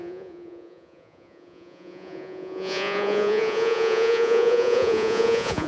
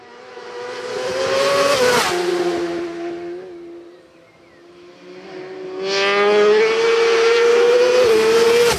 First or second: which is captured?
second